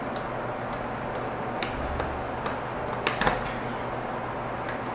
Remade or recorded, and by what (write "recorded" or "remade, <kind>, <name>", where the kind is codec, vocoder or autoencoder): recorded